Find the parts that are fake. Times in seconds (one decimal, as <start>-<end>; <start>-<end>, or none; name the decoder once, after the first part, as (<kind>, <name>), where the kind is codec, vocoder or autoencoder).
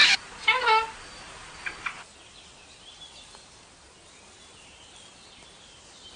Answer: none